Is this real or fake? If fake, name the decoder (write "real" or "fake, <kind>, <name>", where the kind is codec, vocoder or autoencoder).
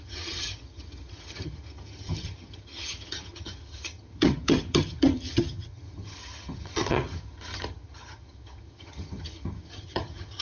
fake, vocoder, HiFi-GAN